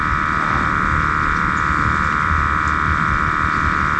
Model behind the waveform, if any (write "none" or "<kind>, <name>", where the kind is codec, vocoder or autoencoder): none